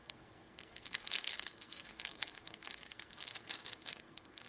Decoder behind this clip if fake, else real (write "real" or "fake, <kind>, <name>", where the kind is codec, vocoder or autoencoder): fake, codec, SNAC